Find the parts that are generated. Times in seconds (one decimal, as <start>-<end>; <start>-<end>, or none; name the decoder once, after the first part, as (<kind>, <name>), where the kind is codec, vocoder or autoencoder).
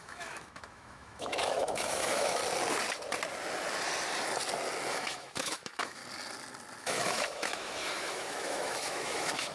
0.0-2.4 (autoencoder, DAC-VAE); 4.9-6.0; 6.8-9.5